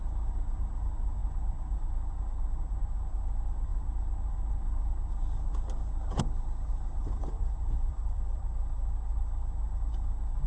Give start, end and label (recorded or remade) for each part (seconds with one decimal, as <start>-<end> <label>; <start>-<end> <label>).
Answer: 0.0-7.0 recorded; 7.0-8.4 remade; 8.4-10.5 recorded